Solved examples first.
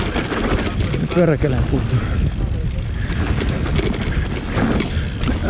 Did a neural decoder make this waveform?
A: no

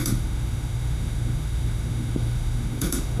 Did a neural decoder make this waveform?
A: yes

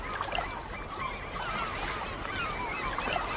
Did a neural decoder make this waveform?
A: no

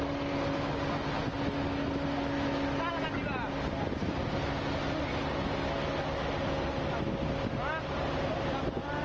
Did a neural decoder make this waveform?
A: no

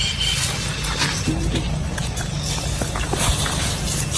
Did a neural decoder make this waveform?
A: no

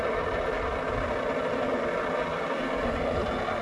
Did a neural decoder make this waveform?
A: no